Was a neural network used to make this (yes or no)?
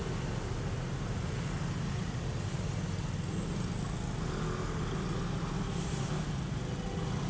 no